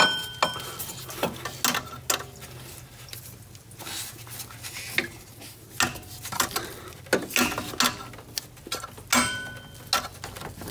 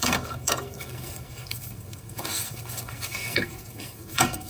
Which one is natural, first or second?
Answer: first